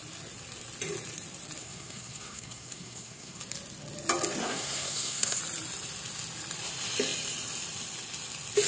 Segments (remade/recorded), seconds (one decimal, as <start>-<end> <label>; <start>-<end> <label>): 0.0-1.6 recorded; 1.6-3.4 remade; 3.4-4.4 recorded; 4.4-5.4 remade; 5.4-8.7 recorded